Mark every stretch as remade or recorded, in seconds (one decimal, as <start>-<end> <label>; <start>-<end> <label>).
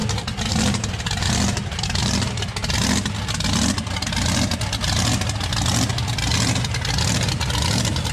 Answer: 0.0-8.1 recorded